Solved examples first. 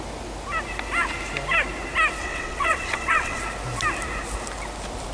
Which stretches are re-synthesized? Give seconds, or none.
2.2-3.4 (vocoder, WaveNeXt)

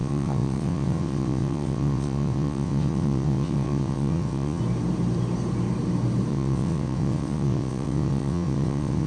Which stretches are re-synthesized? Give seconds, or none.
0.0-4.6 (vocoder, WaveNeXt); 6.3-9.1

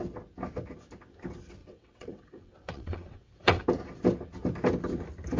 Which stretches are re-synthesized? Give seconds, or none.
1.6-3.6 (vocoder, WaveNeXt)